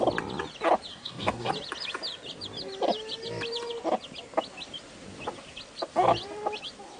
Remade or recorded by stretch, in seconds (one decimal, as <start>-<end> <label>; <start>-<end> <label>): 0.0-0.9 recorded; 0.9-1.5 remade; 1.5-7.0 recorded